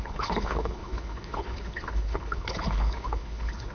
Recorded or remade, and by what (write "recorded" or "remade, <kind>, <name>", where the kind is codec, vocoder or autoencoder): remade, codec, HILCodec